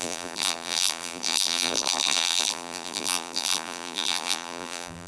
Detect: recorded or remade remade